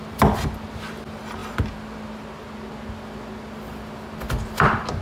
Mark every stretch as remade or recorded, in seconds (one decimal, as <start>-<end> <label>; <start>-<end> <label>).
0.0-5.0 recorded